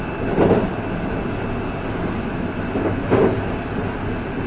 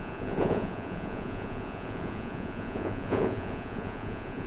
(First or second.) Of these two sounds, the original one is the first